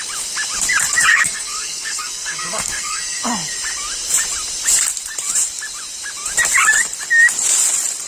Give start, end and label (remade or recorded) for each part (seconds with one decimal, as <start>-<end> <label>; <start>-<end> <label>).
0.0-1.1 recorded; 1.1-3.2 remade; 3.2-8.1 recorded

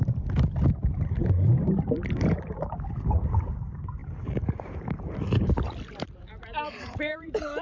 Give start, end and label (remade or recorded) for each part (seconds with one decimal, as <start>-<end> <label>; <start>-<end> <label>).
0.0-4.0 recorded; 4.0-7.6 remade

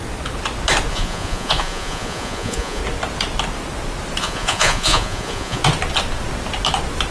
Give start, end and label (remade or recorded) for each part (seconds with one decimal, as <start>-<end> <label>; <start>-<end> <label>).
0.0-0.9 recorded; 0.9-2.8 remade; 2.8-4.2 recorded; 4.2-5.6 remade; 5.6-7.1 recorded

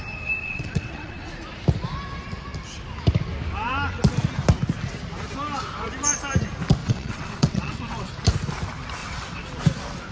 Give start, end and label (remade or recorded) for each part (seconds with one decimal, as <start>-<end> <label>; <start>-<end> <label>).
0.0-0.4 recorded; 0.4-1.3 remade; 1.3-6.8 recorded; 6.8-8.1 remade; 8.1-9.0 recorded; 9.0-9.5 remade; 9.5-10.1 recorded

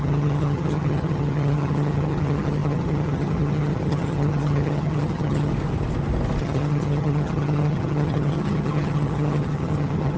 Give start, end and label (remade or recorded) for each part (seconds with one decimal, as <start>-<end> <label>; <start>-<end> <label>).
0.0-5.5 remade; 5.5-6.4 recorded; 6.4-10.2 remade

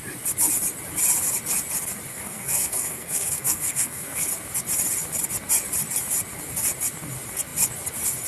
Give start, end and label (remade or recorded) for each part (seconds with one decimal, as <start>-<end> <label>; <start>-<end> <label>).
0.0-2.1 recorded; 2.1-4.3 remade; 4.3-8.3 recorded

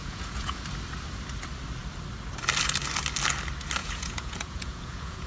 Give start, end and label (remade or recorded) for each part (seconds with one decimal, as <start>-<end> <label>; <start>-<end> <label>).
0.0-0.6 remade; 0.6-3.8 recorded; 3.8-5.3 remade